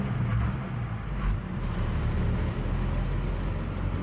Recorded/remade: recorded